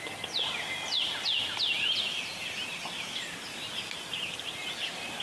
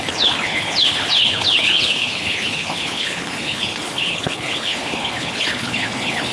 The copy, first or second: second